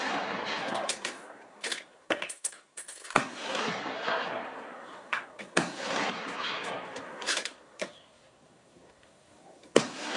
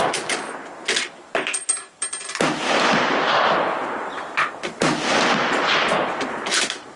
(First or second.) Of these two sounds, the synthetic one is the first